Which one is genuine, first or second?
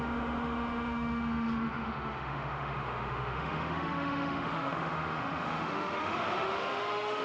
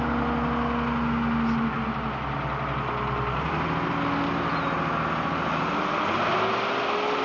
second